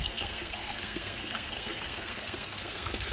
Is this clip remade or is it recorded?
remade